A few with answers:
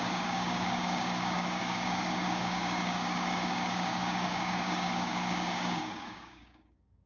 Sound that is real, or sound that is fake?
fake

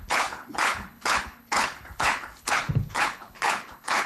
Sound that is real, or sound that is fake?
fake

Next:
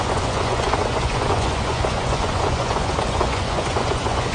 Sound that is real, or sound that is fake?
fake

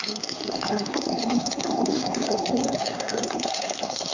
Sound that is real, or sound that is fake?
fake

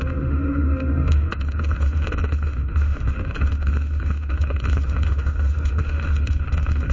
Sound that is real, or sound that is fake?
fake